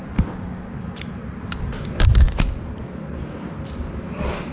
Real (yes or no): yes